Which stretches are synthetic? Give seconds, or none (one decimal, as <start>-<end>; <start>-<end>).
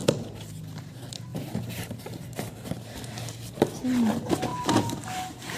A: 0.0-5.6